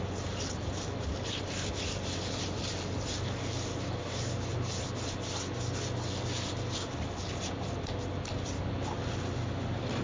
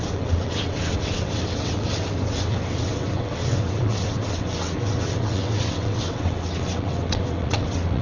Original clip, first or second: first